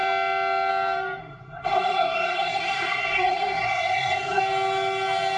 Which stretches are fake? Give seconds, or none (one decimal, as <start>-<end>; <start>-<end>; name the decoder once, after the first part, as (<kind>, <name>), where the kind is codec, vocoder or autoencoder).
1.2-4.4 (codec, SNAC)